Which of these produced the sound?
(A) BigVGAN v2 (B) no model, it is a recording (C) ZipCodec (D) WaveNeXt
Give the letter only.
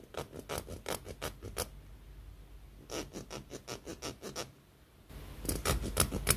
B